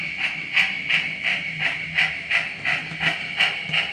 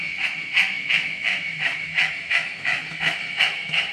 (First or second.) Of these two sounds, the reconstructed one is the second